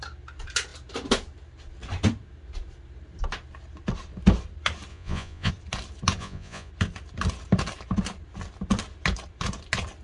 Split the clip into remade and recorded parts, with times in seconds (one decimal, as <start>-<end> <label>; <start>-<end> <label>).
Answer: 0.0-4.9 recorded; 4.9-5.5 remade; 5.5-6.2 recorded; 6.2-6.7 remade; 6.7-10.0 recorded